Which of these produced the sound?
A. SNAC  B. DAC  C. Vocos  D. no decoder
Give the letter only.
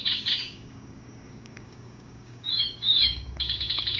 B